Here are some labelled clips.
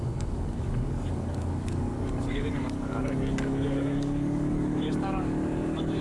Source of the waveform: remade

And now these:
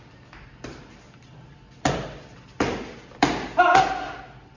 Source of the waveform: recorded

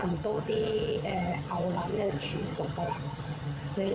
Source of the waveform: remade